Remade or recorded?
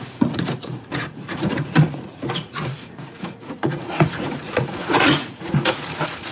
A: remade